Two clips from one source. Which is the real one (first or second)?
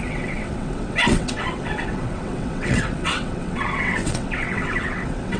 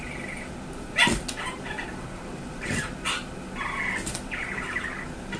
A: second